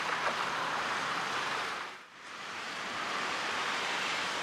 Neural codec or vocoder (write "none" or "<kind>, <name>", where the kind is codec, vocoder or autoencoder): vocoder, BigVGAN v2